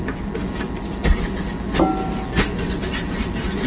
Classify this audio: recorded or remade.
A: recorded